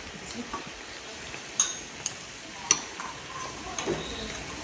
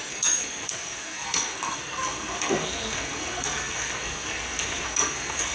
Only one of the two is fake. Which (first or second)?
second